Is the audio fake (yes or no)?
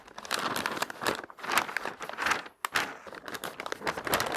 no